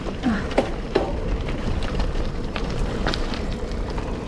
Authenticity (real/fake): fake